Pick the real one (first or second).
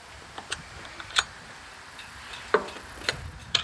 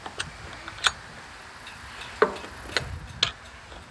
second